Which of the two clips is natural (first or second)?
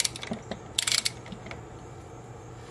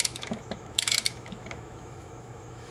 first